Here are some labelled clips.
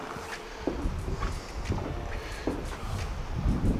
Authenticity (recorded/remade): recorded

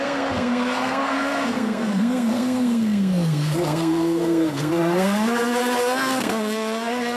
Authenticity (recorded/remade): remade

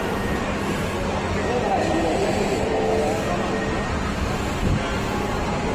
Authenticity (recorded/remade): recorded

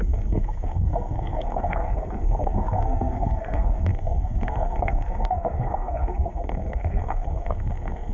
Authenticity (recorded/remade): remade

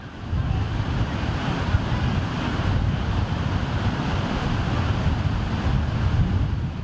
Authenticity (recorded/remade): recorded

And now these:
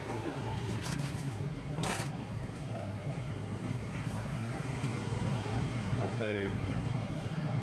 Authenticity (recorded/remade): remade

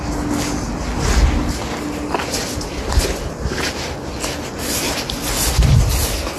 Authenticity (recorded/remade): recorded